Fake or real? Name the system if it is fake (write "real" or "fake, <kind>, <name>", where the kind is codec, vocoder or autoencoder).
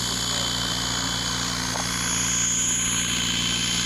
real